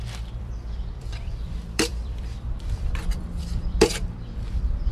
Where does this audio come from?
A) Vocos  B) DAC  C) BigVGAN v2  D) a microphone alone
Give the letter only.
C